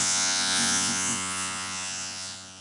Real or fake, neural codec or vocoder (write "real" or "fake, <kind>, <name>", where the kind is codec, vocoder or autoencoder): fake, vocoder, Vocos